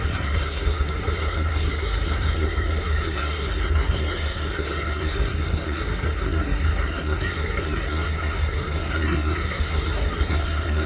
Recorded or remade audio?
remade